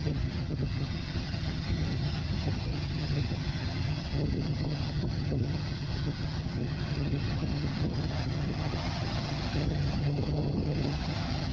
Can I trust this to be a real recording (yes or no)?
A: no